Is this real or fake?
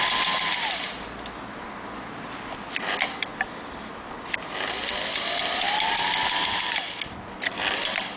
real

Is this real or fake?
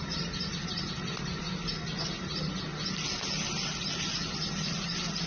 real